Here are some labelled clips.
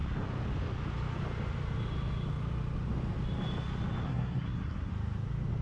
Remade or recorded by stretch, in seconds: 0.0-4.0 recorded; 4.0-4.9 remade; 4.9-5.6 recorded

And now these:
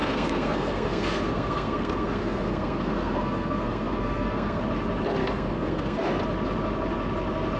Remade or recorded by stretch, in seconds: 0.0-4.6 remade; 4.6-5.2 recorded; 5.2-6.2 remade; 6.2-7.6 recorded

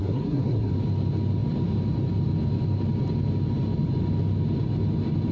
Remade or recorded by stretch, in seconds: 0.0-0.7 remade; 0.7-5.3 recorded

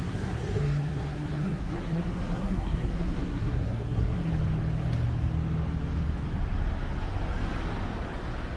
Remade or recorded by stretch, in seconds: 0.0-4.3 remade; 4.3-8.6 recorded

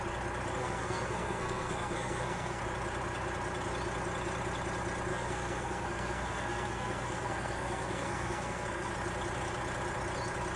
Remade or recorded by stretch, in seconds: 0.0-0.6 recorded; 0.6-2.6 remade; 2.6-5.1 recorded; 5.1-8.9 remade; 8.9-10.6 recorded

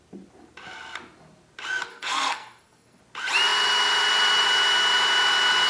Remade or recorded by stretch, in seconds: 0.0-1.9 recorded; 1.9-3.0 remade; 3.0-5.7 recorded